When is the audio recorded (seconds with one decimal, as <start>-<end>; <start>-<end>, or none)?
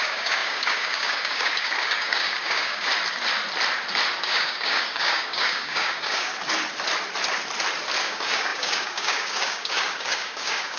2.9-4.2; 6.3-8.0